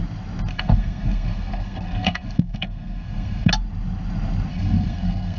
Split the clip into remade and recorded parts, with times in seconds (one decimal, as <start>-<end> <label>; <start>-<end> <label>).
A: 0.0-0.5 recorded; 0.5-3.5 remade; 3.5-4.5 recorded; 4.5-5.4 remade